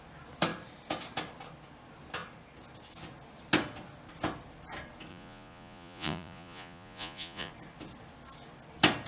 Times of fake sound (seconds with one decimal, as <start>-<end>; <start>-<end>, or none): 5.1-7.5